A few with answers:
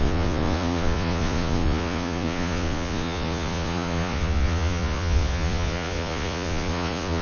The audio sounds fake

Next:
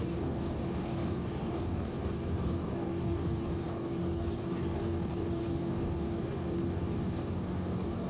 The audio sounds fake